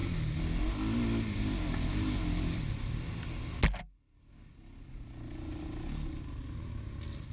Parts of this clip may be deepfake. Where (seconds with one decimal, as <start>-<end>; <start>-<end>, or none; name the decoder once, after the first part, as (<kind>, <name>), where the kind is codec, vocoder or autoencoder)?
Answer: none